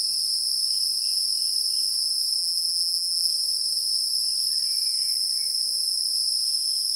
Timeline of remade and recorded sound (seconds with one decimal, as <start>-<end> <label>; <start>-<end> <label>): 0.0-2.4 recorded; 2.4-3.3 remade; 3.3-7.0 recorded